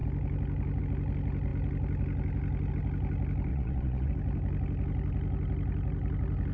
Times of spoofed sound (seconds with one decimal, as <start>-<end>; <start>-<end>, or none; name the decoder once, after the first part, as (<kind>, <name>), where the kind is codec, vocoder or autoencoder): 3.5-4.1 (vocoder, Vocos)

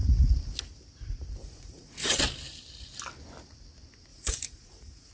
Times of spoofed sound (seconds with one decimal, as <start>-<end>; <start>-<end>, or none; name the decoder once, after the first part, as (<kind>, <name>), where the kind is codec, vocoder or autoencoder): 1.4-2.2 (vocoder, Vocos); 4.1-5.1

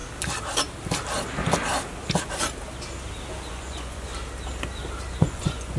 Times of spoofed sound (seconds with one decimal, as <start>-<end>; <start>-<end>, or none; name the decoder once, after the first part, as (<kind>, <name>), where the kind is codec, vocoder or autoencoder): 3.5-4.1 (vocoder, Vocos); 5.1-5.8